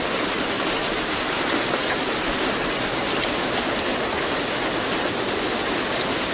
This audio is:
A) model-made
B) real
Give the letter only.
B